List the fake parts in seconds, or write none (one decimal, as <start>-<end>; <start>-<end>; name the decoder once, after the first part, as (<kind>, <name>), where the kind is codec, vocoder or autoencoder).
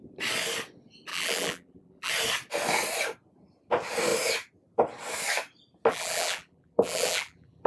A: 1.1-2.1 (vocoder, BigVGAN v2); 5.9-7.7